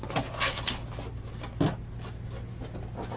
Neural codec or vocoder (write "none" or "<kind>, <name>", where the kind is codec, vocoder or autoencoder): none